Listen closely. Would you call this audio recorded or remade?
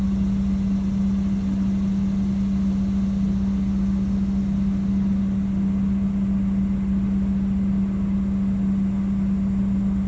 recorded